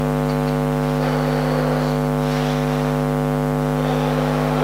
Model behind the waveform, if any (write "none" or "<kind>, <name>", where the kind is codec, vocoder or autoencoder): none